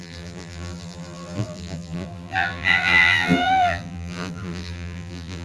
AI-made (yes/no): yes